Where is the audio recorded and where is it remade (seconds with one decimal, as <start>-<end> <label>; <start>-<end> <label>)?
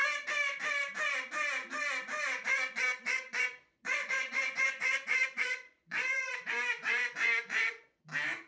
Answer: 0.0-2.9 recorded; 2.9-8.0 remade; 8.0-8.5 recorded